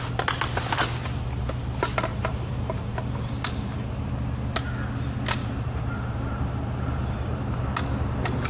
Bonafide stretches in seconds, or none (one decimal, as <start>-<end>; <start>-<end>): 0.0-2.1; 4.1-5.4; 7.7-8.5